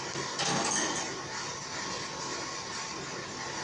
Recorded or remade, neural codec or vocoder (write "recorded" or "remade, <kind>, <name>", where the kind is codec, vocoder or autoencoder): recorded